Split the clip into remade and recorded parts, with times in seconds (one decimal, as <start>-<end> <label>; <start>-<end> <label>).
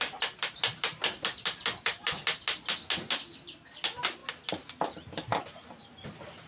0.0-6.5 recorded